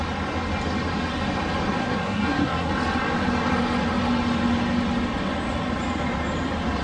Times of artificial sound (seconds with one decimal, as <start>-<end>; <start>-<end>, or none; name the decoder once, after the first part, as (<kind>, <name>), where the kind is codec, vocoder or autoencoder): 1.8-2.7 (codec, SNAC)